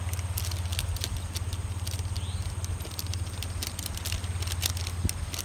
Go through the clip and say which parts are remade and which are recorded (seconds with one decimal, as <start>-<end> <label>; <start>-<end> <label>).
0.0-5.4 recorded